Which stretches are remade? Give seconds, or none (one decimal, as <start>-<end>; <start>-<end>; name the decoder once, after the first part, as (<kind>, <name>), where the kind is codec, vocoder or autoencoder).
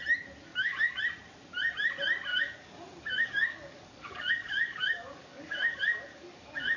0.5-1.0 (codec, DAC); 2.3-6.8